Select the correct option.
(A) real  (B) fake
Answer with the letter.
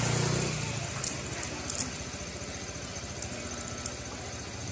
A